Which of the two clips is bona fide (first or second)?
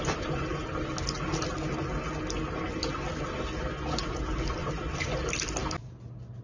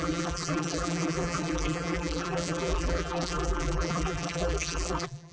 first